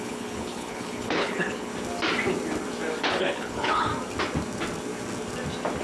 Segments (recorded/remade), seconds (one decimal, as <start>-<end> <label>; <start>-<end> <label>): 0.0-1.7 remade; 1.7-3.0 recorded; 3.0-3.9 remade; 3.9-5.8 recorded

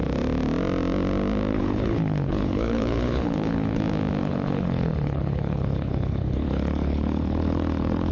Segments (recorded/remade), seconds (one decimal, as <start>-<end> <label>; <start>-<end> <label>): 0.0-1.5 recorded; 1.5-3.8 remade; 3.8-4.2 recorded; 4.2-8.1 remade

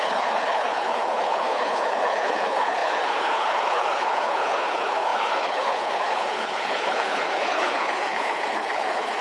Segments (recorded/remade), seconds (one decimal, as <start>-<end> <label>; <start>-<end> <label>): 0.0-9.2 remade

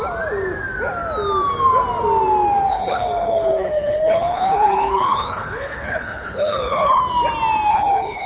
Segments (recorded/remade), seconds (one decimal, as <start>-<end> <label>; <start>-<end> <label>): 0.0-2.7 recorded; 2.7-7.0 remade; 7.0-7.7 recorded; 7.7-8.3 remade